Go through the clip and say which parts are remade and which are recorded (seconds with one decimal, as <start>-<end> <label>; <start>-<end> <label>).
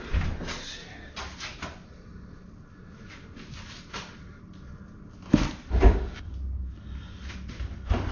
0.0-8.1 recorded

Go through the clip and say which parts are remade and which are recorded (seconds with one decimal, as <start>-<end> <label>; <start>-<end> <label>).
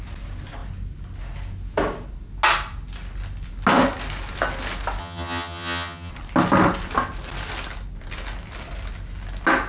0.0-5.0 recorded; 5.0-6.1 remade; 6.1-9.7 recorded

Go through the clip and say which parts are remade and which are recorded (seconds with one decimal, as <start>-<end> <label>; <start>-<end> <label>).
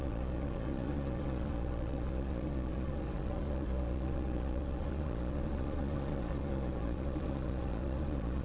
0.0-8.4 remade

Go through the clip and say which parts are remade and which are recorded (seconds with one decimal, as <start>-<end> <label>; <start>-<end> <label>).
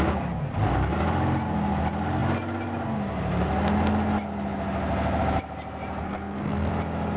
0.0-6.0 recorded; 6.0-6.7 remade; 6.7-7.2 recorded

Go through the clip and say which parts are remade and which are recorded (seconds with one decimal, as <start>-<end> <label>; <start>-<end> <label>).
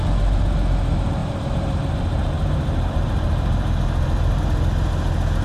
0.0-1.2 recorded; 1.2-4.4 remade; 4.4-5.4 recorded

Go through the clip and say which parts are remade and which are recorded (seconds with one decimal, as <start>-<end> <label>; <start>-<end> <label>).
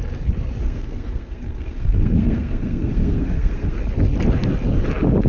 0.0-0.6 recorded; 0.6-3.8 remade; 3.8-5.3 recorded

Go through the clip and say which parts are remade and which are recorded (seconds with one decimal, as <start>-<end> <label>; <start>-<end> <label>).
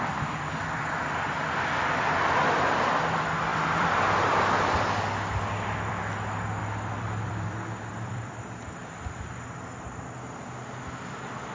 0.0-3.5 recorded; 3.5-6.0 remade; 6.0-6.6 recorded; 6.6-8.3 remade; 8.3-11.5 recorded